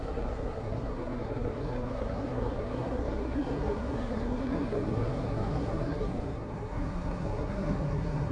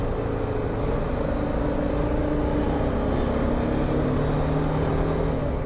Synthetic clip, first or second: first